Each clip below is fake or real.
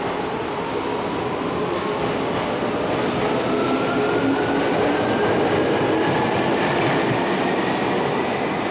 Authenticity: real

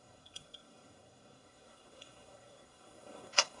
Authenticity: fake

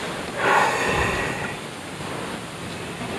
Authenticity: real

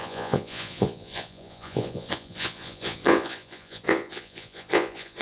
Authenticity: fake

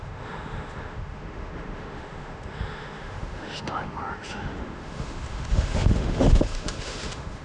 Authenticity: fake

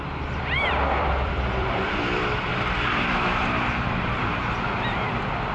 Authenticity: fake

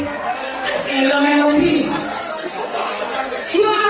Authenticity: fake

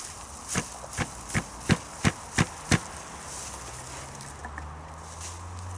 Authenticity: real